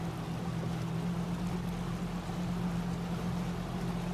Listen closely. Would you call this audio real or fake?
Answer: real